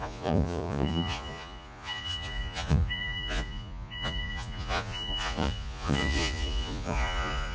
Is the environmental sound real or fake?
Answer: fake